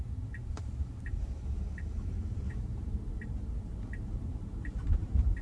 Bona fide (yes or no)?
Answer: no